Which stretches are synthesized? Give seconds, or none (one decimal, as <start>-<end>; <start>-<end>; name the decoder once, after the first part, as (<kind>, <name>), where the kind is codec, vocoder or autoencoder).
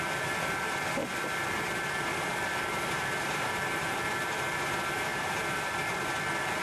1.0-4.1 (vocoder, BigVGAN v2); 5.1-5.9